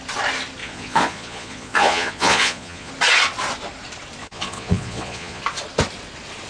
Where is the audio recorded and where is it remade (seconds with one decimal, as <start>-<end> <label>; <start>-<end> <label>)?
0.0-0.6 recorded; 0.6-2.9 remade; 2.9-4.2 recorded; 4.2-5.4 remade; 5.4-6.5 recorded